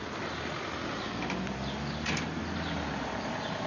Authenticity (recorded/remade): recorded